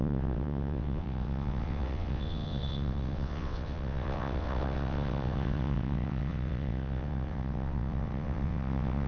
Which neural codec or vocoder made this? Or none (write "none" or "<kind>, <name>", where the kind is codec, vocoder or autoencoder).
vocoder, WaveNeXt